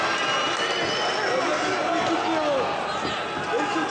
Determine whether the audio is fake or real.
real